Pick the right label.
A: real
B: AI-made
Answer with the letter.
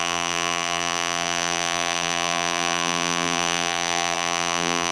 B